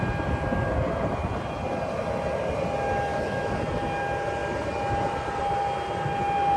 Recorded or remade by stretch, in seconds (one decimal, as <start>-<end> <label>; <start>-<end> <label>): 0.0-3.1 recorded; 3.1-3.6 remade; 3.6-6.6 recorded